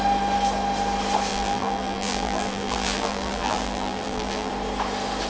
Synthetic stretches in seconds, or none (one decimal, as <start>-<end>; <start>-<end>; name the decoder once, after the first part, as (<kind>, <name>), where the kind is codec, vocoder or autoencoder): 1.3-4.5 (vocoder, BigVGAN v2)